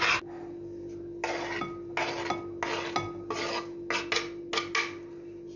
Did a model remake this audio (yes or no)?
no